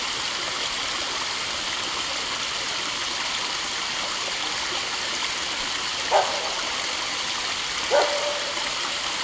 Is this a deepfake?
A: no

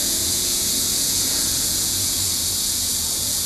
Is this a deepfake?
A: yes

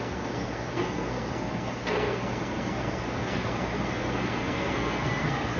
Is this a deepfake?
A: yes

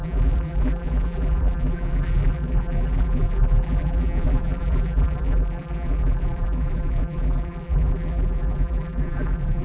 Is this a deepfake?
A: yes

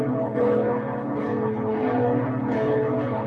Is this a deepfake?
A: yes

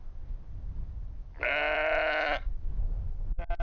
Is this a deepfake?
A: no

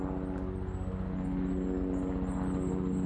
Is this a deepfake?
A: no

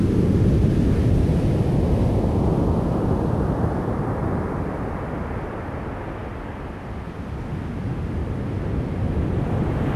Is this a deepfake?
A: no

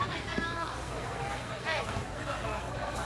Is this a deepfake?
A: yes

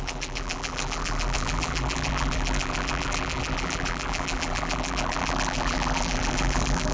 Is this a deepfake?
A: yes